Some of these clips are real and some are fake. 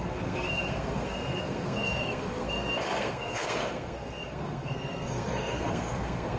fake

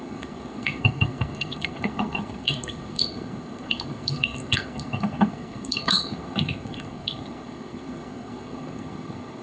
fake